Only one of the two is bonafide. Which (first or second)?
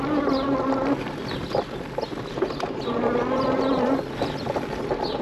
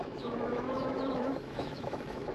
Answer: first